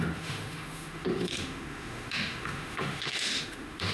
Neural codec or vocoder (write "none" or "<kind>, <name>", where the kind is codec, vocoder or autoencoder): autoencoder, DAC-VAE